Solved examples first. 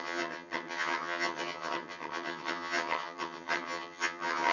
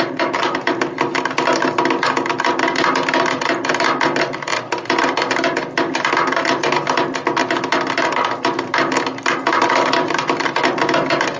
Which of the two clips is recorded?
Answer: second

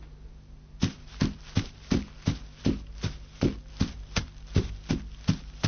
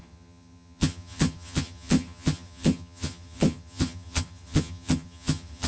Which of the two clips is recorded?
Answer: first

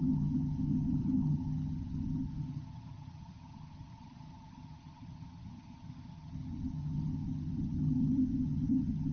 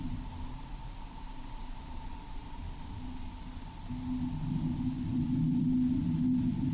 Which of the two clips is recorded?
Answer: second